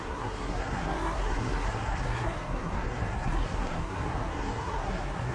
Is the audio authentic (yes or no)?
no